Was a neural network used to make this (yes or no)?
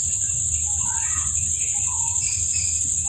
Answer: yes